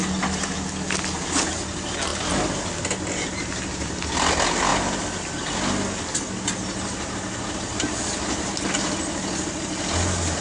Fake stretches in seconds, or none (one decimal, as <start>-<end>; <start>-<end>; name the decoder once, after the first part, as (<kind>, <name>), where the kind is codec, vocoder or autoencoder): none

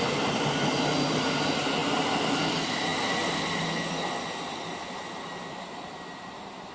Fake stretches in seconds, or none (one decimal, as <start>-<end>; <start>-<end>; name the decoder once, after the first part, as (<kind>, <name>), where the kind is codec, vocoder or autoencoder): none

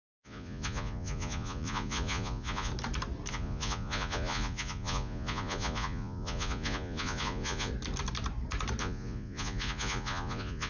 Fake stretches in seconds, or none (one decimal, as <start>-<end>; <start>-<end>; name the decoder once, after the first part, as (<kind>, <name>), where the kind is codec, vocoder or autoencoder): 0.0-2.7 (vocoder, Vocos); 3.3-7.7; 8.8-10.7